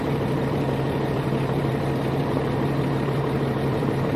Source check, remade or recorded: remade